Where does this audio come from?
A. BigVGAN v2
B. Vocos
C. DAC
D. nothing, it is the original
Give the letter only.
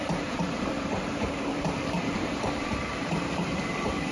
A